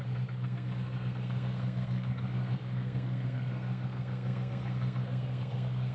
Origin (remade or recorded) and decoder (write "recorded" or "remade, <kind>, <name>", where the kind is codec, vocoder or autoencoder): remade, codec, SNAC